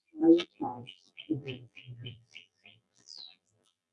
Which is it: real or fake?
fake